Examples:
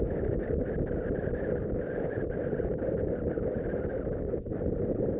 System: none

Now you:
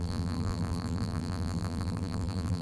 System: vocoder, BigVGAN v2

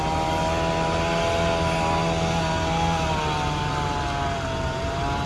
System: none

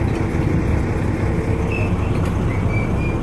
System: none